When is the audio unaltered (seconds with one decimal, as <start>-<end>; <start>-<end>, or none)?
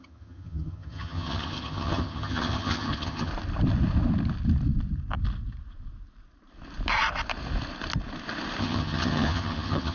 3.3-8.6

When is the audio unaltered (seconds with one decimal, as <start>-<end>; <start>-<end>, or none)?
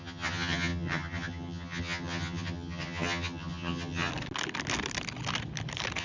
4.1-6.0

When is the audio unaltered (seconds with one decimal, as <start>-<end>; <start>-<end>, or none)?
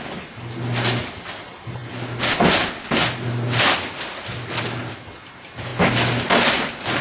0.0-7.0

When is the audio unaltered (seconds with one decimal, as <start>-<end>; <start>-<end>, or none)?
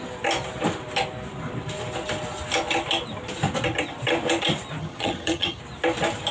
0.0-4.8; 5.6-6.3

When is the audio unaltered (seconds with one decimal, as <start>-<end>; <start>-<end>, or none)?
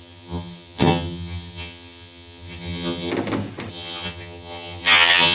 3.1-3.7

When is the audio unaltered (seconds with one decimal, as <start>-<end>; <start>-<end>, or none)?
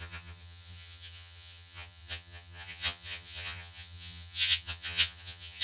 none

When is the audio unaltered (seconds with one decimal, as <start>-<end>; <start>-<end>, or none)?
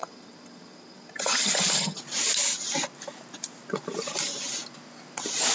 2.0-5.5